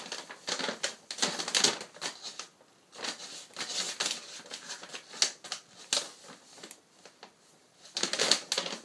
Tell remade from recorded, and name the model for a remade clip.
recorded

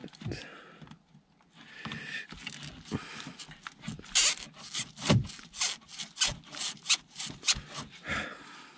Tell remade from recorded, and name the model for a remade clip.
recorded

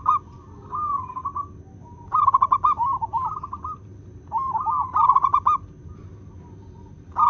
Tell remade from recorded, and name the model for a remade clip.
recorded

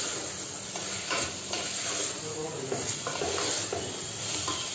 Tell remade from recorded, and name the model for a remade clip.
recorded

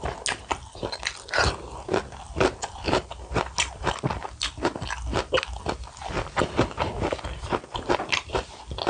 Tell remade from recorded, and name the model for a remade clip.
recorded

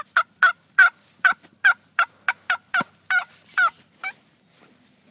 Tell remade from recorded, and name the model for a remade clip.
remade, vocoder, BigVGAN v2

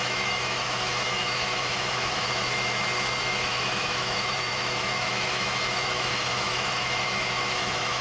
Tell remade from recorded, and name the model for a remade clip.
remade, autoencoder, DAC-VAE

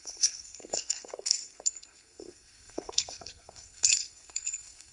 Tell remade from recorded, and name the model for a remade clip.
remade, codec, SNAC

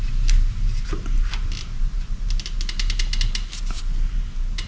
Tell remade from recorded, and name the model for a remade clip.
recorded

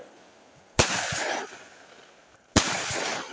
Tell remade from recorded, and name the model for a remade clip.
recorded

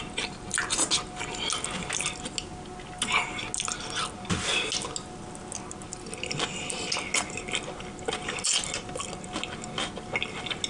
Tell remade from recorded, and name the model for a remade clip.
recorded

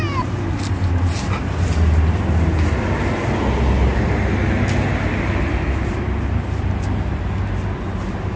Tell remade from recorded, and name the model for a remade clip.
recorded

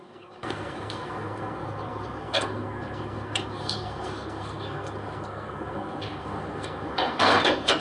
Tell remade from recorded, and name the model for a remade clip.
remade, codec, SNAC